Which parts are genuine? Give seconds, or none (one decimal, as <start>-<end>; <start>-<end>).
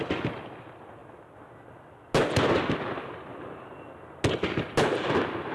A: 0.0-5.5